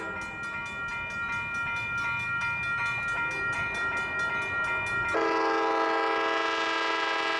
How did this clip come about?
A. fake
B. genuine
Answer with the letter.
B